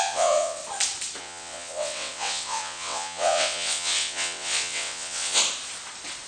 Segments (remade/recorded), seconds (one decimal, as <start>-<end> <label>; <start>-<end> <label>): 0.0-0.6 remade; 0.6-1.2 recorded; 1.2-5.4 remade; 5.4-6.3 recorded